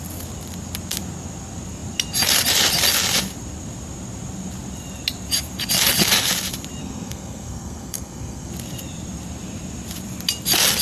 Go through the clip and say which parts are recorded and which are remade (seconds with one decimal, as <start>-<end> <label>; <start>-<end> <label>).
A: 0.0-6.8 recorded; 6.8-8.5 remade; 8.5-10.8 recorded